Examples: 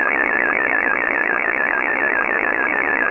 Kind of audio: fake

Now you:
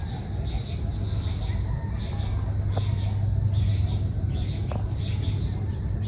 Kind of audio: real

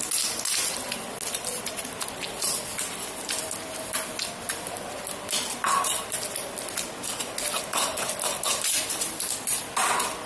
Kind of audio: real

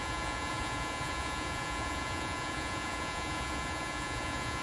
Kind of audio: fake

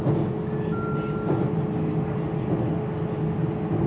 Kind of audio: real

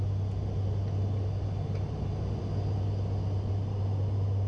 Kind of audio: real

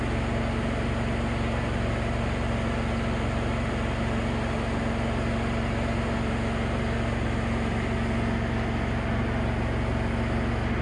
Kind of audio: real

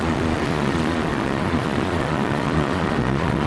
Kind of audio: fake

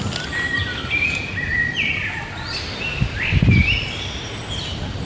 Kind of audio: real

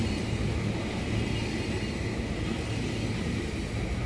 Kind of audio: real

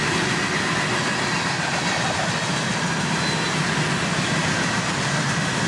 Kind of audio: real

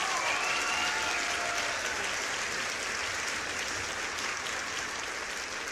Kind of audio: real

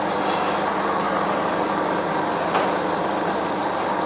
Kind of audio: real